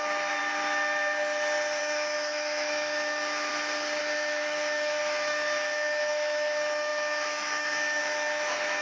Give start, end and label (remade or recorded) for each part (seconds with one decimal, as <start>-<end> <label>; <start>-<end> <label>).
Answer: 0.0-0.4 remade; 0.4-1.8 recorded; 1.8-3.5 remade; 3.5-4.0 recorded; 4.0-8.8 remade